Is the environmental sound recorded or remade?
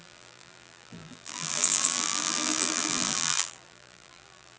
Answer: remade